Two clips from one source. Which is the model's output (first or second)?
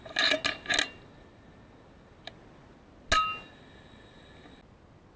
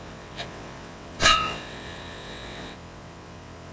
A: second